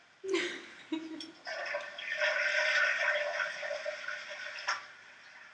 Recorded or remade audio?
recorded